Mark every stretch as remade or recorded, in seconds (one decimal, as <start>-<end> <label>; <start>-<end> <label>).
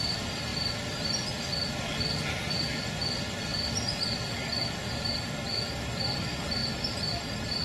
0.0-7.6 recorded